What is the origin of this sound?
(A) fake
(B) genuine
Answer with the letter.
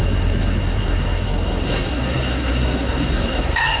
A